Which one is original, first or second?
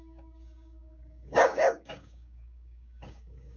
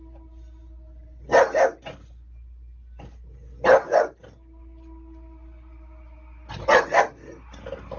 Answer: second